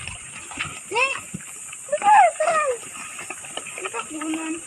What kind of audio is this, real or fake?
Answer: real